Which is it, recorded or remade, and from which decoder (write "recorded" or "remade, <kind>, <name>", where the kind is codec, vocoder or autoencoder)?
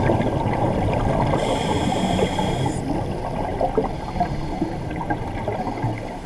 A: recorded